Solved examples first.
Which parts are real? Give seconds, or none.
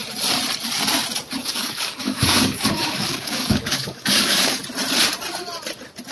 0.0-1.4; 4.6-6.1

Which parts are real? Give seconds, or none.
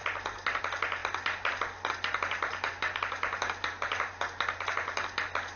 0.0-5.6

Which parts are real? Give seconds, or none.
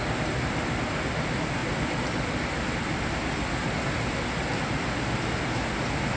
0.0-6.2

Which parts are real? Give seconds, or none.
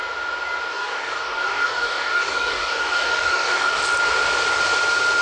0.0-0.7; 3.8-5.2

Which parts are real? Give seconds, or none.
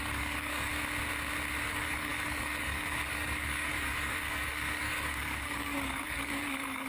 0.7-1.6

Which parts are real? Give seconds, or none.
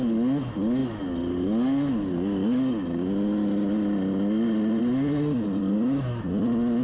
0.0-5.6; 6.3-6.8